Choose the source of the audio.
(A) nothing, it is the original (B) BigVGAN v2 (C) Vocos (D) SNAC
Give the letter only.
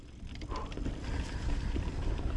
A